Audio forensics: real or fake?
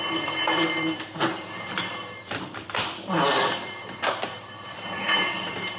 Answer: fake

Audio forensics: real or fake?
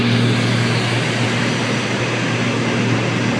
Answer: real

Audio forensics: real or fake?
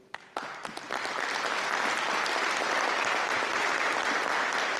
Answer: real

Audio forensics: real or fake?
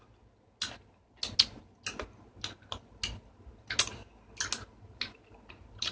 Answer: real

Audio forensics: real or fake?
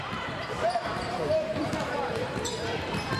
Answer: fake